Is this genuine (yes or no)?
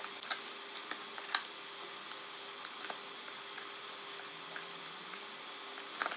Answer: yes